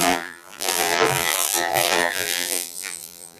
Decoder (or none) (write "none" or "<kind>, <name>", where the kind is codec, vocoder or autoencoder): vocoder, BigVGAN v2